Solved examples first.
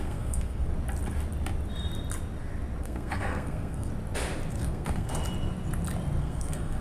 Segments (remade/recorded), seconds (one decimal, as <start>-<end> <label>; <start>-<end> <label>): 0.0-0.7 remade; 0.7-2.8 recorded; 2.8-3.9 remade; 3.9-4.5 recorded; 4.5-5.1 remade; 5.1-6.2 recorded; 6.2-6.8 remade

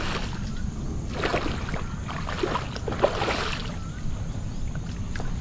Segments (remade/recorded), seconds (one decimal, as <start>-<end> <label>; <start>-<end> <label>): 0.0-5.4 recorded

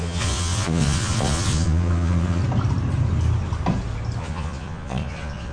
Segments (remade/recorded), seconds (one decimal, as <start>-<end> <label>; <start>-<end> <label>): 0.0-2.4 remade; 2.4-4.2 recorded; 4.2-5.5 remade

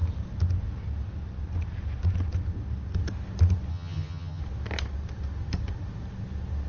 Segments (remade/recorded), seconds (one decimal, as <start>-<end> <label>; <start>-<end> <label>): 0.0-3.7 recorded; 3.7-4.4 remade; 4.4-6.7 recorded